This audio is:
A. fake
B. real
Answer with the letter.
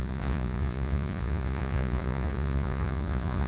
A